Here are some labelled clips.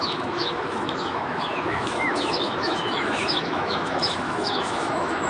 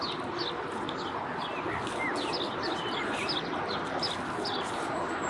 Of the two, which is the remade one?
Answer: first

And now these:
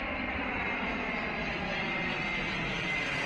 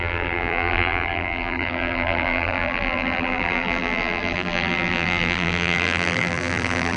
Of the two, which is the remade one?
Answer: second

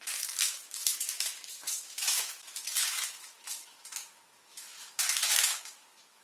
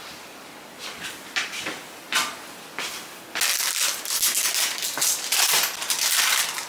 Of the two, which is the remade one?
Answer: first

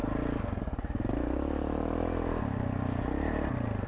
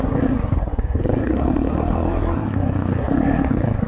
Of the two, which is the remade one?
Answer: second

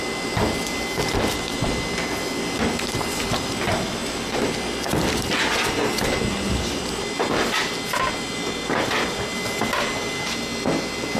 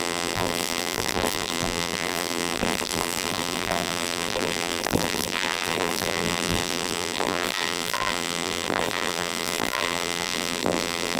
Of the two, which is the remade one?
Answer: second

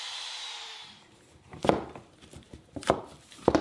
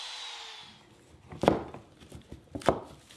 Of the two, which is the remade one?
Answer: first